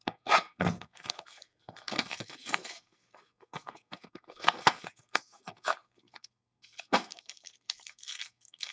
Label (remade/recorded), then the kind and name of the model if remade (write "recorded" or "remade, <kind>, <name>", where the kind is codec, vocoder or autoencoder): remade, codec, SNAC